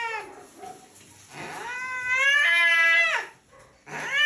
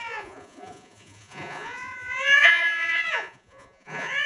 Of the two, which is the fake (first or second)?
second